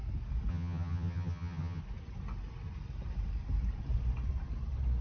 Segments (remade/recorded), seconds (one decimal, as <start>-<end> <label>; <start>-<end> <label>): 0.0-0.5 recorded; 0.5-1.8 remade; 1.8-5.0 recorded